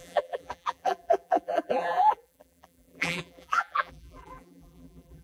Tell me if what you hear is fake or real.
fake